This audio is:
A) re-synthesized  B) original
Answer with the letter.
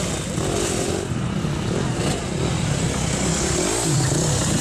B